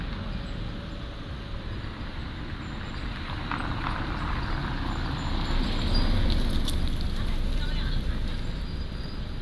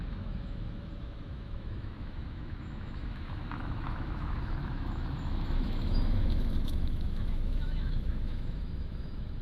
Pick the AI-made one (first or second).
second